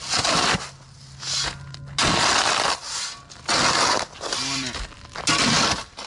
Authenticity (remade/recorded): recorded